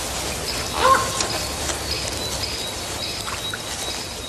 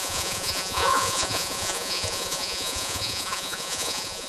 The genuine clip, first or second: first